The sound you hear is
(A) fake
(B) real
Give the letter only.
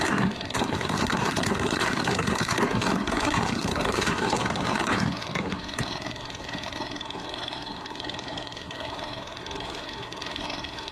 A